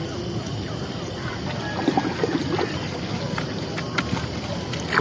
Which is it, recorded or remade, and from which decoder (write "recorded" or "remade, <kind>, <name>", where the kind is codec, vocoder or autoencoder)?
recorded